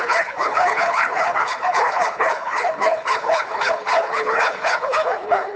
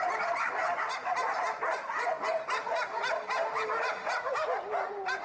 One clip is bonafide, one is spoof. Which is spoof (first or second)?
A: first